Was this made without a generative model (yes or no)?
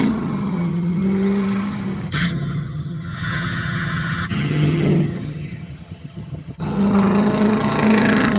no